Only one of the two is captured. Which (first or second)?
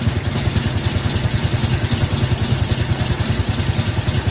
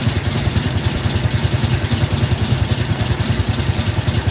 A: first